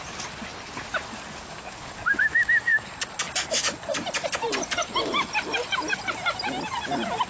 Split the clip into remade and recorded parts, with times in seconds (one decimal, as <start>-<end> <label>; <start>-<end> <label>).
0.0-7.3 recorded